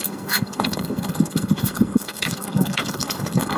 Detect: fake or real fake